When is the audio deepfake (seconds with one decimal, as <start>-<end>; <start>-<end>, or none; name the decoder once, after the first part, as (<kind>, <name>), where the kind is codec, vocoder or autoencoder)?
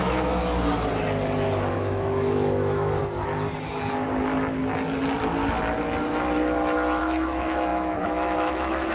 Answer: 0.0-0.4 (autoencoder, DAC-VAE); 1.7-3.0; 7.0-8.9